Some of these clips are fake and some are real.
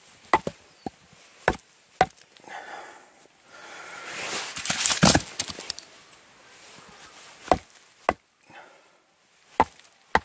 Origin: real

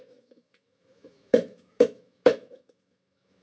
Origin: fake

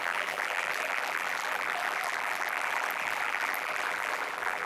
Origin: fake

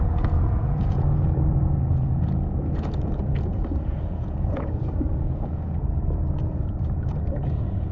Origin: fake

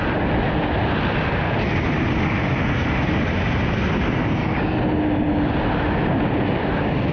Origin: real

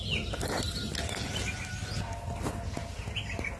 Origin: real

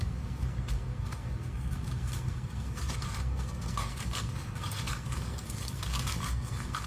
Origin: fake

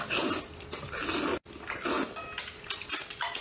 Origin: real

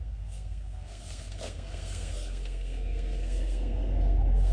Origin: fake